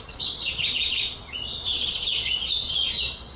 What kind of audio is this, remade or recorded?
remade